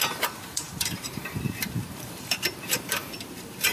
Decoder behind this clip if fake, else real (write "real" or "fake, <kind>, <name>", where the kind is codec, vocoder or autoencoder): fake, vocoder, BigVGAN v2